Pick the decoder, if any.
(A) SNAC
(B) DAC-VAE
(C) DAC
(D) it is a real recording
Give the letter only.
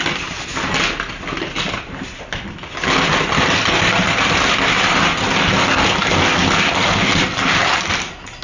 D